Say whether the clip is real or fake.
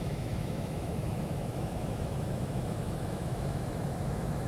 fake